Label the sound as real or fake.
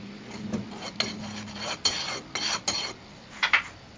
real